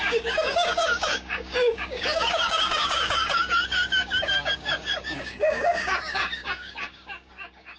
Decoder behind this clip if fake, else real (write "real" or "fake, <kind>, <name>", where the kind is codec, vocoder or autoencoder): fake, codec, DAC